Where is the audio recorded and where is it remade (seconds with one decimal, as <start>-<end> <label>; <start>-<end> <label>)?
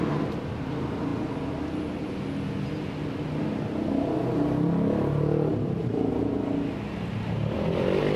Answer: 0.0-8.2 recorded